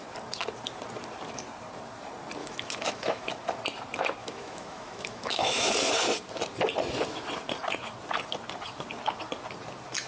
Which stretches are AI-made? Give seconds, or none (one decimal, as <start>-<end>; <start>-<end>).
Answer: 2.4-3.3; 4.2-5.7